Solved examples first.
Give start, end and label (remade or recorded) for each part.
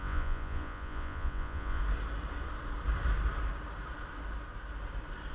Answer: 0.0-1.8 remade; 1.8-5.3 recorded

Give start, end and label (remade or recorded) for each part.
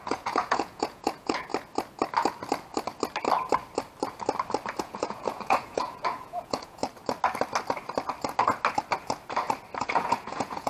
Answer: 0.0-1.5 remade; 1.5-4.8 recorded; 4.8-6.8 remade; 6.8-9.8 recorded; 9.8-10.7 remade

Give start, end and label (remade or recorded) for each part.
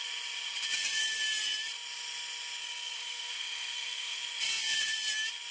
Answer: 0.0-2.6 recorded; 2.6-4.2 remade; 4.2-5.5 recorded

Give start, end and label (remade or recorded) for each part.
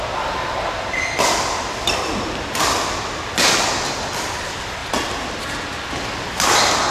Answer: 0.0-6.9 recorded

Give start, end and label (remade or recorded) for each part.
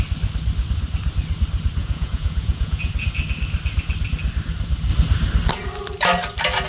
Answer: 0.0-1.8 recorded; 1.8-2.9 remade; 2.9-6.7 recorded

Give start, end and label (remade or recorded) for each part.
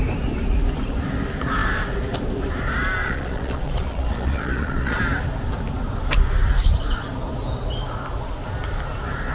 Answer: 0.0-3.0 recorded; 3.0-5.0 remade; 5.0-9.3 recorded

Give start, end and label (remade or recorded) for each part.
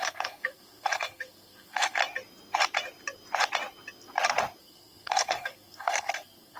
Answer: 0.0-2.0 remade; 2.0-4.6 recorded; 4.6-6.6 remade